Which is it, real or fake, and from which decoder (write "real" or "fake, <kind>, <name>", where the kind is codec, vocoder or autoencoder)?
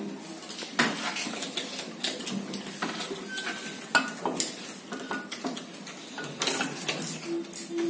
real